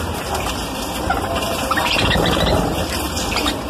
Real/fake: fake